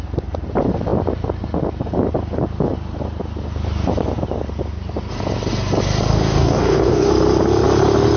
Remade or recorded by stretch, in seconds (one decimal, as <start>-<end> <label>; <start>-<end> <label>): 0.0-6.1 recorded; 6.1-7.1 remade; 7.1-8.2 recorded